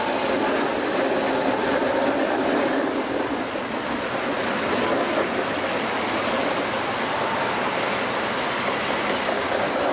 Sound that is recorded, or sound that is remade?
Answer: recorded